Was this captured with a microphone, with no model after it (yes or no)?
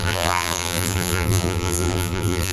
no